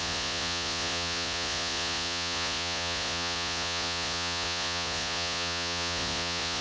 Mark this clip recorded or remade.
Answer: remade